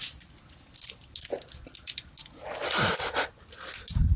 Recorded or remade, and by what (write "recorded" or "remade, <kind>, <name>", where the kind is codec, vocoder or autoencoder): recorded